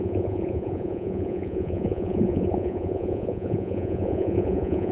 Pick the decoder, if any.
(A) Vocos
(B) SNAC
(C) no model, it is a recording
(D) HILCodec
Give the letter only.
A